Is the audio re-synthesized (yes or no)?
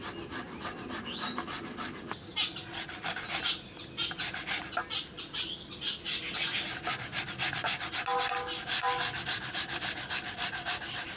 no